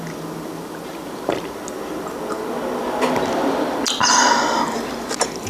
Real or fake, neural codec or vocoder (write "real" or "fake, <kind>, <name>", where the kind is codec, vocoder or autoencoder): real